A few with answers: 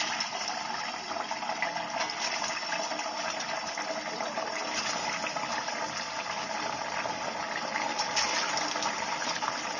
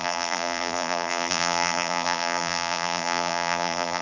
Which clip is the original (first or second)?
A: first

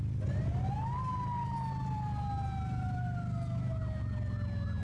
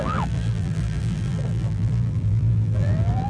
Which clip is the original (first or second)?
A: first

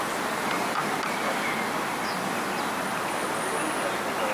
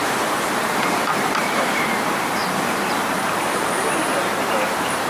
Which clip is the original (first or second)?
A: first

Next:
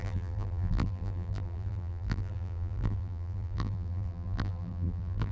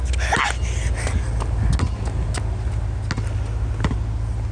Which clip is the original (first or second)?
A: second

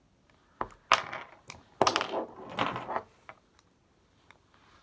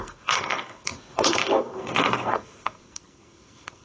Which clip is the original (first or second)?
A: first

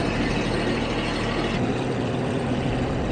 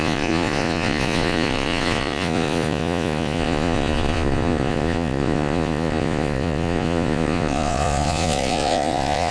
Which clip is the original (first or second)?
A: first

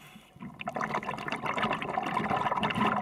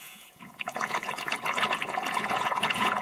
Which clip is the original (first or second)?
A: first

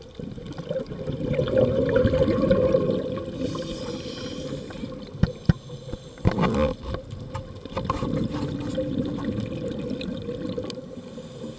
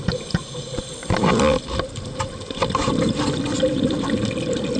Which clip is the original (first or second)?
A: first